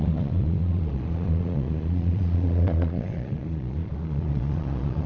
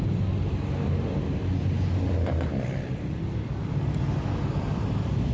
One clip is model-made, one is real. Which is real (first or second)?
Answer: second